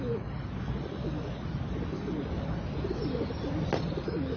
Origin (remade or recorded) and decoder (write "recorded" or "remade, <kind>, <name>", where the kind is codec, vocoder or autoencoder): recorded